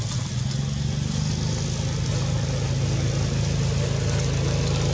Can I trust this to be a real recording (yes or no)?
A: yes